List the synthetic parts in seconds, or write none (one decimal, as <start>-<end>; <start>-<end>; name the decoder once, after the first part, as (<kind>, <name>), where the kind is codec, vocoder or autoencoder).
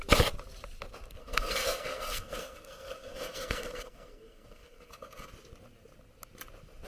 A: 1.2-5.3 (codec, SNAC)